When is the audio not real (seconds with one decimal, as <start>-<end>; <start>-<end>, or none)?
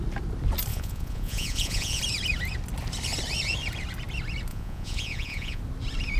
0.7-2.0; 4.5-5.6